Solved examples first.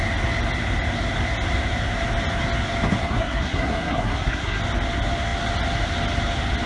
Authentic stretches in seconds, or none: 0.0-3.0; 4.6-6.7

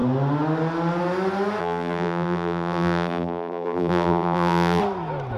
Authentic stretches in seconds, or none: 0.0-1.6; 4.8-5.4

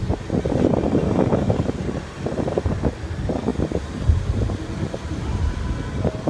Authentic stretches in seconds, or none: 0.0-6.3

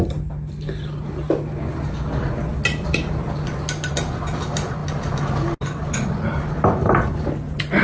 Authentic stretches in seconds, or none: 0.0-7.8

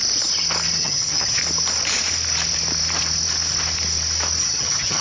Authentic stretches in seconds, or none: 0.0-0.8; 1.4-4.4

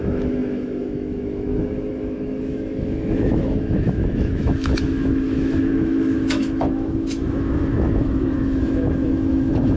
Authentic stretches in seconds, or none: none

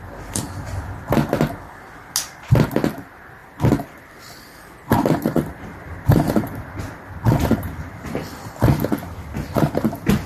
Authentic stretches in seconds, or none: 0.7-3.4; 8.5-10.3